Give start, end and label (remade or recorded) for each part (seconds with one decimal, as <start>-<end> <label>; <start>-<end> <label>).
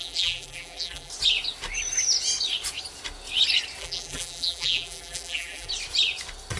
0.0-1.1 remade; 1.1-3.8 recorded; 3.8-5.7 remade; 5.7-6.6 recorded